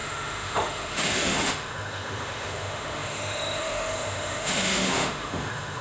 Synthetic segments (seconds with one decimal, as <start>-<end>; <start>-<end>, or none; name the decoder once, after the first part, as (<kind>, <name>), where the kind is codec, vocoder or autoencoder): 0.0-5.8 (autoencoder, DAC-VAE)